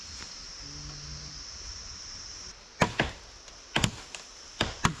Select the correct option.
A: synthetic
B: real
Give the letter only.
B